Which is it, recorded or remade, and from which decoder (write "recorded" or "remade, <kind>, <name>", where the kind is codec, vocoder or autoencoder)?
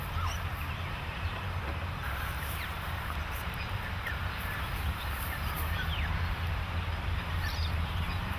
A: remade, vocoder, BigVGAN v2